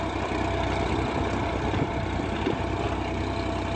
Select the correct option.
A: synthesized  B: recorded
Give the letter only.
B